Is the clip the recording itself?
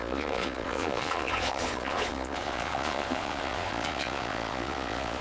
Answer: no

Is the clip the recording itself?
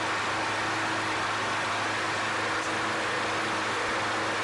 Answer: yes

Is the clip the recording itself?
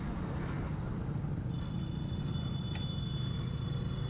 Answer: yes